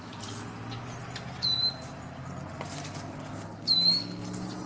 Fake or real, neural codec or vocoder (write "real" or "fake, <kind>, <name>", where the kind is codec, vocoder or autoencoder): real